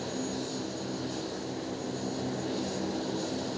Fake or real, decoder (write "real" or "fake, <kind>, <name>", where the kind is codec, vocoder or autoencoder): real